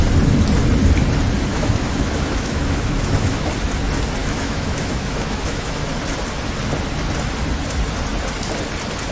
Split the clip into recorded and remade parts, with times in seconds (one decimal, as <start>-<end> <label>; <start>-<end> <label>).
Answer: 0.0-1.5 recorded; 1.5-3.5 remade; 3.5-4.2 recorded; 4.2-5.9 remade; 5.9-9.1 recorded